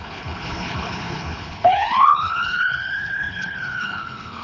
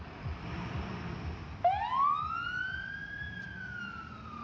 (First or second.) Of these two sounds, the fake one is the first